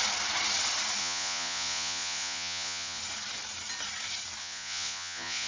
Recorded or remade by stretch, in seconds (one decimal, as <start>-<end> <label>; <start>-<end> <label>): 0.0-1.0 recorded; 1.0-3.0 remade; 3.0-4.4 recorded; 4.4-5.5 remade

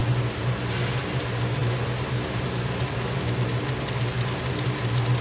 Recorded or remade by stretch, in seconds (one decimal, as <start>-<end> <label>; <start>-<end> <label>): 0.0-5.2 recorded

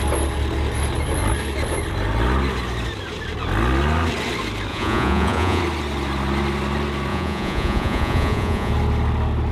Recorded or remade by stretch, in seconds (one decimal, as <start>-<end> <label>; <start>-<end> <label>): 0.0-4.7 recorded; 4.7-5.6 remade; 5.6-7.1 recorded; 7.1-8.7 remade; 8.7-9.5 recorded

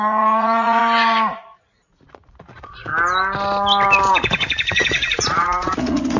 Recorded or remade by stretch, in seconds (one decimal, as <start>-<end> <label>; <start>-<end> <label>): 0.0-0.8 remade; 0.8-1.6 recorded; 1.6-2.9 remade; 2.9-4.1 recorded; 4.1-6.2 remade

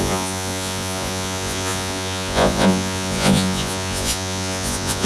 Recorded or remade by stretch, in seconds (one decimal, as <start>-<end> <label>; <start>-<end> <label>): 0.0-5.1 remade

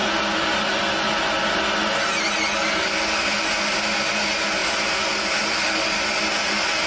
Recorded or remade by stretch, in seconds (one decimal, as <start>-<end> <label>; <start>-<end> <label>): 0.0-6.9 recorded